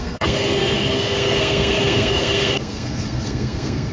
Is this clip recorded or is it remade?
remade